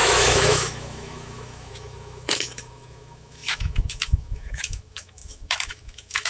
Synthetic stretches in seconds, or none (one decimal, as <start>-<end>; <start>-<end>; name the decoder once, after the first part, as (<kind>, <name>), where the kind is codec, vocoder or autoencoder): 0.0-6.3 (autoencoder, DAC-VAE)

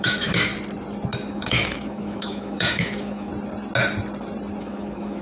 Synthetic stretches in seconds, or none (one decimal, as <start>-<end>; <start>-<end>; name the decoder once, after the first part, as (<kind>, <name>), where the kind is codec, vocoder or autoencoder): 0.0-0.5 (autoencoder, DAC-VAE); 1.3-3.3; 4.6-5.2

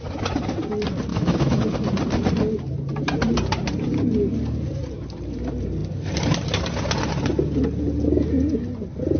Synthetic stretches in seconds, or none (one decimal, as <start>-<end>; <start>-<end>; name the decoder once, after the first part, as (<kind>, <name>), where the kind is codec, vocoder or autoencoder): 1.1-1.6 (autoencoder, DAC-VAE)

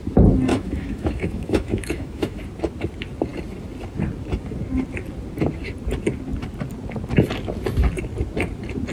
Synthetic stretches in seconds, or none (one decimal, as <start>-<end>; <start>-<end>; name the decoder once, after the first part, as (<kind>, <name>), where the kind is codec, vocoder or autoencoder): 0.5-2.4 (autoencoder, DAC-VAE)